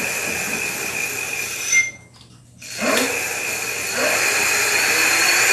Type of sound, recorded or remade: recorded